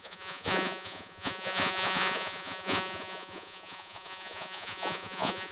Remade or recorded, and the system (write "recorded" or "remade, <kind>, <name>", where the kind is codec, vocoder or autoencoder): remade, vocoder, Vocos